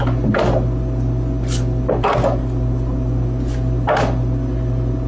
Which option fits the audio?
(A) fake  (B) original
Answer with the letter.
B